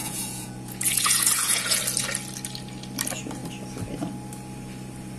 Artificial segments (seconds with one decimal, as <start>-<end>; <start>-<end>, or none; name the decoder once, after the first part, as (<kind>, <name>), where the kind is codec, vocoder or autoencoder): 0.0-1.8 (vocoder, Vocos)